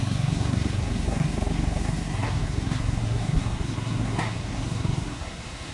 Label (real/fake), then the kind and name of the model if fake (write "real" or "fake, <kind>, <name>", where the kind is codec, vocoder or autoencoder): fake, codec, SNAC